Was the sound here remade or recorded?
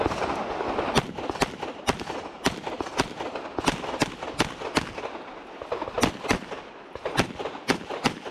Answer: recorded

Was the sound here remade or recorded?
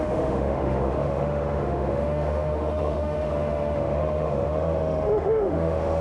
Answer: remade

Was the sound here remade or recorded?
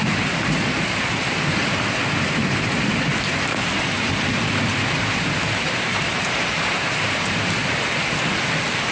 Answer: remade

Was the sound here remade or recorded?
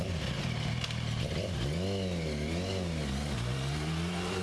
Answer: recorded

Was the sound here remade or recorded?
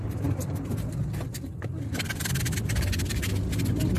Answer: recorded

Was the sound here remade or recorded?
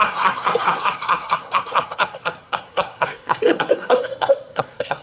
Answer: remade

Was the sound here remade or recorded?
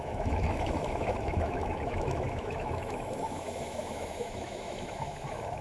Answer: remade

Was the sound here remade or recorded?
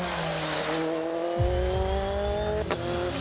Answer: recorded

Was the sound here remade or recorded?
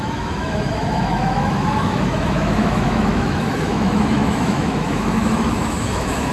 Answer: remade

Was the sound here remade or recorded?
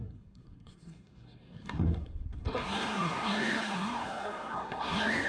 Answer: remade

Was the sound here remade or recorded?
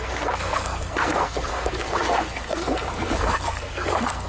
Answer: remade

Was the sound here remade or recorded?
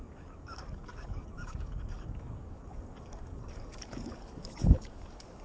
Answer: remade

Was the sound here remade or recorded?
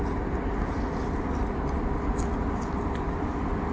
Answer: recorded